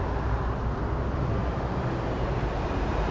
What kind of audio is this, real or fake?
real